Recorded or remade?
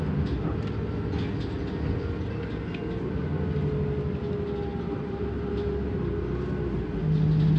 recorded